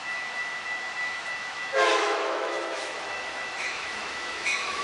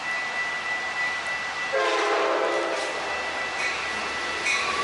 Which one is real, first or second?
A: second